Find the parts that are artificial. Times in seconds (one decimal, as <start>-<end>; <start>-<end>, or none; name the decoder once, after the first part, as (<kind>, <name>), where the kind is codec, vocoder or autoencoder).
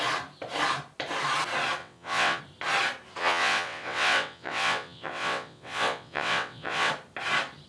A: 1.8-2.4 (vocoder, WaveNeXt); 3.2-6.9